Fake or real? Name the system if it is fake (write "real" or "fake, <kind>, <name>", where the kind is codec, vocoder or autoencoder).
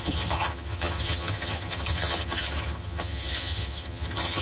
fake, vocoder, HiFi-GAN